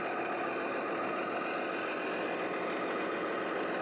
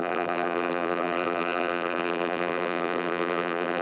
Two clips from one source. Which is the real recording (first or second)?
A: first